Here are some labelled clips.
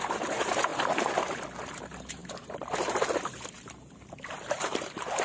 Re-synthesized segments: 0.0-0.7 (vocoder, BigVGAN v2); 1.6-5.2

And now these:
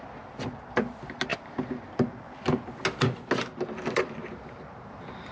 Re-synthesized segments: none

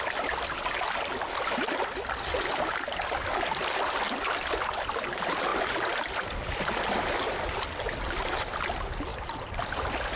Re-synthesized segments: 9.1-10.2 (vocoder, BigVGAN v2)

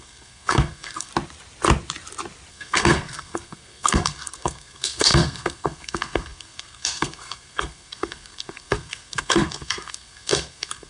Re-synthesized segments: 0.0-1.1 (codec, SNAC); 2.5-10.9

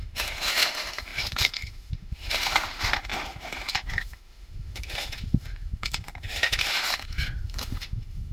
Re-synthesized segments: 0.0-8.3 (autoencoder, DAC-VAE)

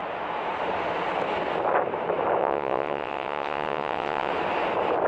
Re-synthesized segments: 2.4-4.3 (vocoder, WaveNeXt)

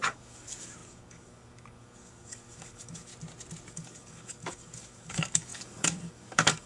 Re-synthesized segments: 0.0-3.1 (codec, DAC); 3.7-6.7

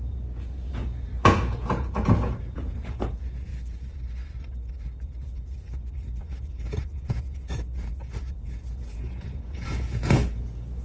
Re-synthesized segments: 0.0-3.5 (vocoder, Vocos); 6.3-10.8